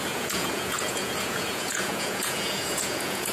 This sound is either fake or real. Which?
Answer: fake